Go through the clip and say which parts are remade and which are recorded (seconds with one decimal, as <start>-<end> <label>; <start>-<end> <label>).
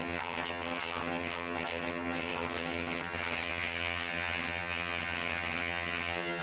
0.0-6.4 remade